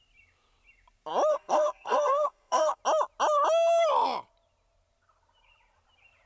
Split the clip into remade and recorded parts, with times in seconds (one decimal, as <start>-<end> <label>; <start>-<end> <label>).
0.0-1.3 recorded; 1.3-2.8 remade; 2.8-6.3 recorded

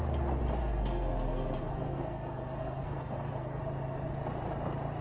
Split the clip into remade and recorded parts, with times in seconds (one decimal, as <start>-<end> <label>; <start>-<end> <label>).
0.0-0.6 recorded; 0.6-3.6 remade; 3.6-5.0 recorded

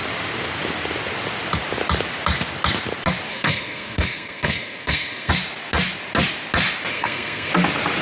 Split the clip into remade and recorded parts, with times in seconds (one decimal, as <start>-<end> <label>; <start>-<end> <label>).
0.0-3.3 recorded; 3.3-5.3 remade; 5.3-6.9 recorded; 6.9-7.5 remade; 7.5-8.0 recorded